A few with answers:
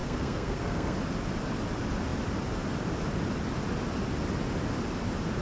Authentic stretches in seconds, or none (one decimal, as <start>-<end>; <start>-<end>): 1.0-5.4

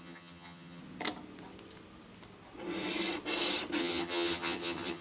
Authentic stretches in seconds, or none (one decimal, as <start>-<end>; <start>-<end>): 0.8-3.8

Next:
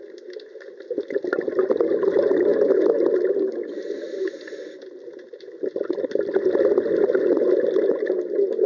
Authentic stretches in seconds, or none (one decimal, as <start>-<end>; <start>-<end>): 0.0-8.7